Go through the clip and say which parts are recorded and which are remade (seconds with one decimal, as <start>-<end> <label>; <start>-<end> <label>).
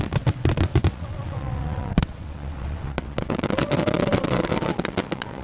0.0-5.4 remade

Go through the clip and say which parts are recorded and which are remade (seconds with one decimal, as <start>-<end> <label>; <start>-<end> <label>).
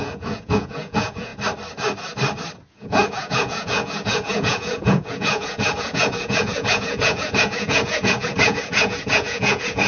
0.0-1.3 remade; 1.3-2.7 recorded; 2.7-9.9 remade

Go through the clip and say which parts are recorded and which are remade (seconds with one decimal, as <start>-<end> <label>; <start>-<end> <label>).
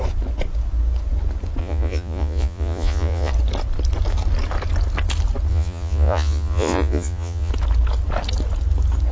0.0-1.6 recorded; 1.6-3.3 remade; 3.3-5.5 recorded; 5.5-7.5 remade; 7.5-9.1 recorded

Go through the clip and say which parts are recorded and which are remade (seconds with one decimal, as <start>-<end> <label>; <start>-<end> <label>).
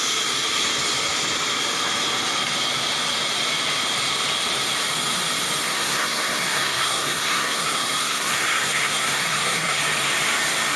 0.0-5.6 recorded; 5.6-9.8 remade; 9.8-10.8 recorded